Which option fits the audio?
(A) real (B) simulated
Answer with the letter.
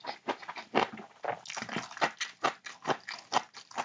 A